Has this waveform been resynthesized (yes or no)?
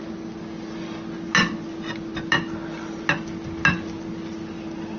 no